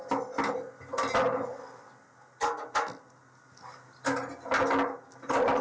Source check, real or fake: real